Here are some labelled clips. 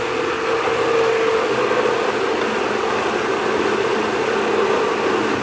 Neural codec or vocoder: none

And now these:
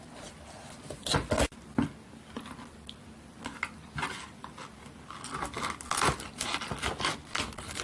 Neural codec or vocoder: none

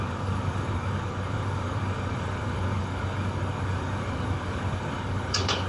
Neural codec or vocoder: codec, DAC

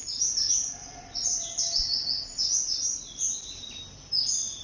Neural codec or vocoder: none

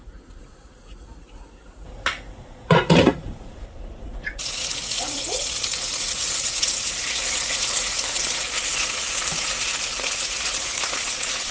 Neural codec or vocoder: vocoder, Vocos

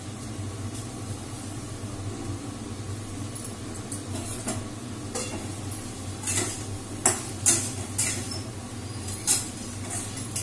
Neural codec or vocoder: none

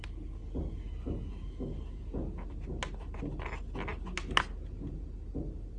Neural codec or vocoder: none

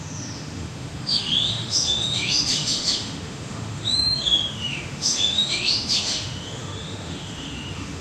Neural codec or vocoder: autoencoder, DAC-VAE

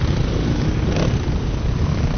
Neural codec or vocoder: none